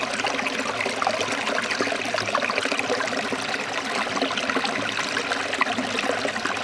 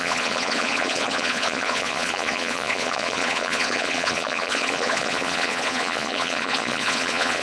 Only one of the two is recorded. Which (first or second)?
first